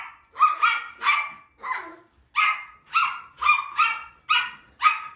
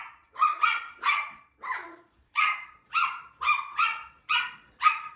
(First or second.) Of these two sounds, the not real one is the second